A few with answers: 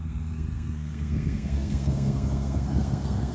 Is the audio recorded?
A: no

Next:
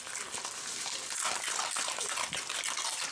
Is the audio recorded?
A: yes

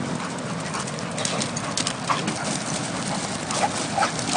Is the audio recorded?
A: yes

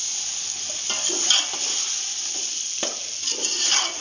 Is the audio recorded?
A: yes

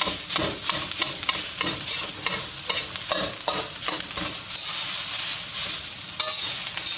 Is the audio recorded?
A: yes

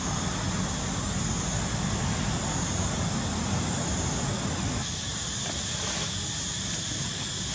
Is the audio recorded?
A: yes